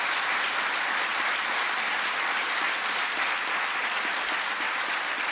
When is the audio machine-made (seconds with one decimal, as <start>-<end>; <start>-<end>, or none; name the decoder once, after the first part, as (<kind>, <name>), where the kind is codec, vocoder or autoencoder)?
none

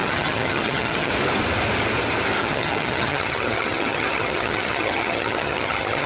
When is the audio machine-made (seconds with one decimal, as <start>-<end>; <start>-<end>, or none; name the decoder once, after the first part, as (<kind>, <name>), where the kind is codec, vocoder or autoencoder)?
0.0-1.1 (vocoder, HiFi-GAN); 2.4-6.1